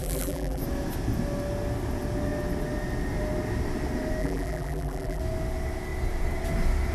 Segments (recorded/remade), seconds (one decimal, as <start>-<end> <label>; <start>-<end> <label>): 0.0-0.6 remade; 0.6-4.2 recorded; 4.2-5.2 remade; 5.2-6.9 recorded